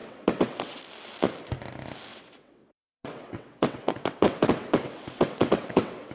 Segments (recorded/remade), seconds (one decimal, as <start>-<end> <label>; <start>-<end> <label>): 0.0-0.8 remade; 0.8-2.1 recorded; 2.1-6.1 remade